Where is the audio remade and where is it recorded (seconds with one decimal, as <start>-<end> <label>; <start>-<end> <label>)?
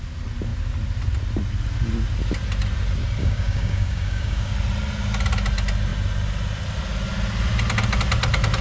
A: 0.0-3.2 recorded; 3.2-4.5 remade; 4.5-8.6 recorded